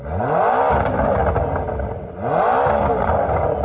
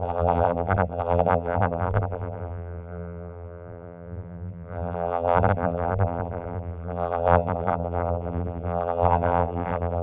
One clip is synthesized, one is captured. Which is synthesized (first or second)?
second